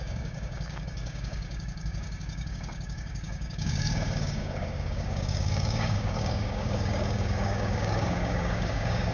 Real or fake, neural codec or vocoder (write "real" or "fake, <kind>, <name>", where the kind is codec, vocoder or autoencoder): fake, codec, DAC